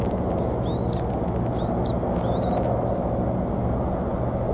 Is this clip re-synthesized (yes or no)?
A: no